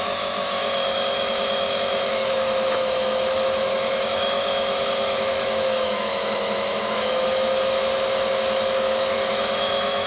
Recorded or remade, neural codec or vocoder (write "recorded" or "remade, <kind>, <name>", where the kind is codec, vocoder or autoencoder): remade, autoencoder, DAC-VAE